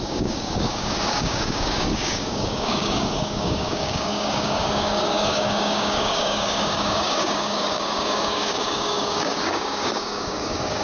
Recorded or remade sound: remade